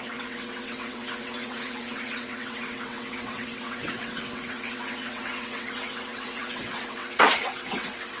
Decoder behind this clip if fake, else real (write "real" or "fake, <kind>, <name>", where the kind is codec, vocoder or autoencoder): fake, vocoder, WaveNeXt